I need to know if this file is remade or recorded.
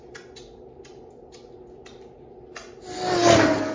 recorded